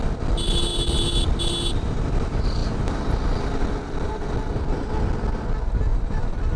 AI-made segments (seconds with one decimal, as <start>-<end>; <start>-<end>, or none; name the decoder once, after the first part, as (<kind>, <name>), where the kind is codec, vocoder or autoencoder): 5.9-6.6 (vocoder, BigVGAN v2)

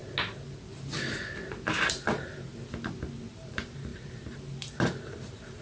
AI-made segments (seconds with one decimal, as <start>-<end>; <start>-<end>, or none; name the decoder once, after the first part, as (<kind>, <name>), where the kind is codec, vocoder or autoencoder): 1.7-2.5 (vocoder, BigVGAN v2); 3.3-5.6

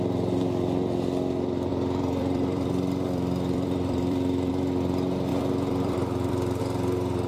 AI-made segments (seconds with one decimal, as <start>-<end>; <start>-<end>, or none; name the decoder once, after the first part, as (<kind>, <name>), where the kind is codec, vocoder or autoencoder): 1.7-4.5 (vocoder, BigVGAN v2); 5.3-6.6

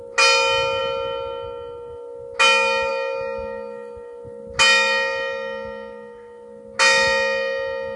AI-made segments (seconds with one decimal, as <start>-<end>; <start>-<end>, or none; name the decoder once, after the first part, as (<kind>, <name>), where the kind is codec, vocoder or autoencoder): none

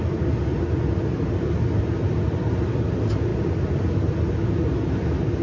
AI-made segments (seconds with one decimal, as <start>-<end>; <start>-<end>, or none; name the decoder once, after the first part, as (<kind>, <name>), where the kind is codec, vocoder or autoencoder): none

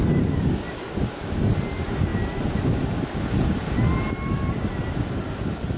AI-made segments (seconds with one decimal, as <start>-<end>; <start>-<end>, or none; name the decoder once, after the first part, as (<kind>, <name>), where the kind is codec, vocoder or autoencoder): none